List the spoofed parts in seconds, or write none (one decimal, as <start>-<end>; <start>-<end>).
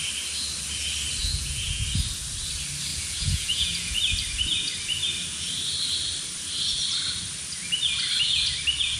1.2-1.8; 2.9-4.0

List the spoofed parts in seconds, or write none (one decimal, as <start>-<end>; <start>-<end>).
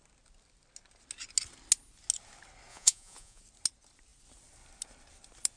2.7-3.4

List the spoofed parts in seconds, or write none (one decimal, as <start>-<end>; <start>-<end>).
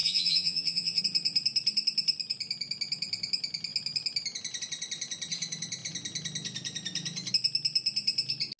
0.0-1.0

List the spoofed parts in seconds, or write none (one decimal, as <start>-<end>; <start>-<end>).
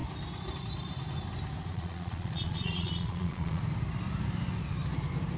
1.7-3.6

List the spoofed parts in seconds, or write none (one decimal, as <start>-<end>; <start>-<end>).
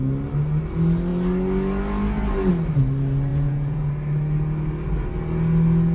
3.3-3.9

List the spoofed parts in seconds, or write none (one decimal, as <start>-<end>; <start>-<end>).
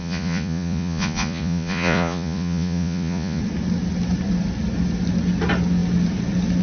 0.0-3.4